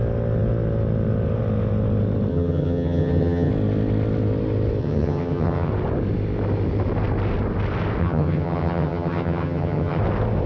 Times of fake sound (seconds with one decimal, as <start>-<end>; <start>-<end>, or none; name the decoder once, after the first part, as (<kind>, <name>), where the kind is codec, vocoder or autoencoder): 2.3-3.5 (vocoder, HiFi-GAN); 4.8-5.7; 8.0-10.0